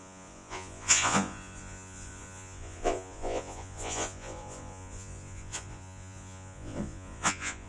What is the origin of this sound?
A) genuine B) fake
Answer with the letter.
B